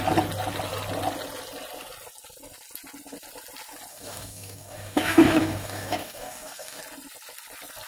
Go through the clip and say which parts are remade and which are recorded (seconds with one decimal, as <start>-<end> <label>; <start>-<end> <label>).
0.0-3.9 recorded; 3.9-6.8 remade; 6.8-7.9 recorded